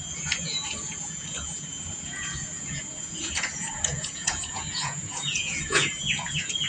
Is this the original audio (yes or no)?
no